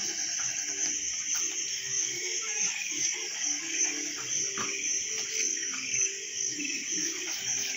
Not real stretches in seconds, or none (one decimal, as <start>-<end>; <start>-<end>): 1.7-4.3; 5.5-6.6; 7.0-7.8